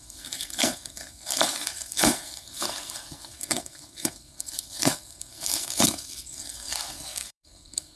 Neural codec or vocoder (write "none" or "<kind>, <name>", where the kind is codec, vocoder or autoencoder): codec, SNAC